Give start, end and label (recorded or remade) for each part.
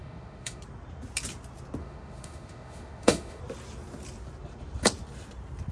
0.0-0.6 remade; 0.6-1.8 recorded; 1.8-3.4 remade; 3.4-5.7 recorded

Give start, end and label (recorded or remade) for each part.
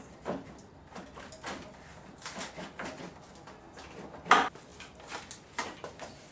0.0-6.3 recorded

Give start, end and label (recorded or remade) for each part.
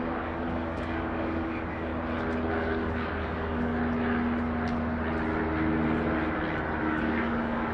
0.0-1.9 remade; 1.9-2.5 recorded; 2.5-3.7 remade; 3.7-6.8 recorded; 6.8-7.7 remade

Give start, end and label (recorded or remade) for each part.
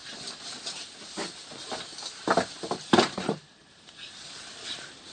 0.0-5.1 recorded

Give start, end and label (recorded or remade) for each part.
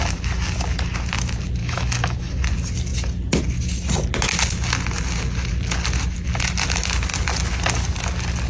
0.0-1.6 recorded; 1.6-2.3 remade; 2.3-8.5 recorded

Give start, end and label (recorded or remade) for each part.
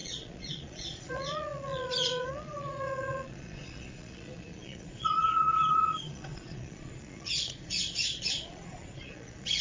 0.0-9.6 remade